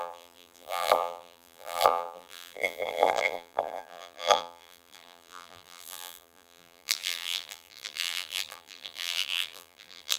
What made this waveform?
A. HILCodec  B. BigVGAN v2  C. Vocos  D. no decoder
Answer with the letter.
B